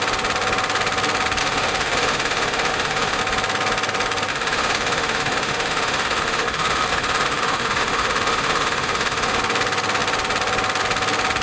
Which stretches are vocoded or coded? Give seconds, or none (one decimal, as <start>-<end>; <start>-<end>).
1.4-3.2; 4.3-9.4